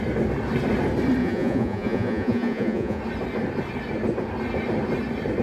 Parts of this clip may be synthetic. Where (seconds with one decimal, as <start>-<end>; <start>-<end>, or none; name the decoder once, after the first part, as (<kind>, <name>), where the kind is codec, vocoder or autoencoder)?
1.2-3.0 (vocoder, Vocos)